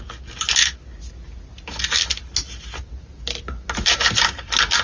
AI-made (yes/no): no